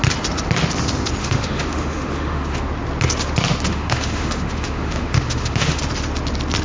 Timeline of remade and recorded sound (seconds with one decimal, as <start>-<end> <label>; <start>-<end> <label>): 0.0-1.2 recorded; 1.2-2.6 remade; 2.6-3.7 recorded; 3.7-5.8 remade; 5.8-6.6 recorded